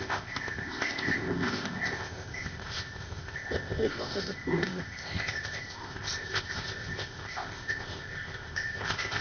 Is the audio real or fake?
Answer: fake